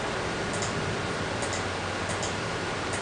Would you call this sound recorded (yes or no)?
yes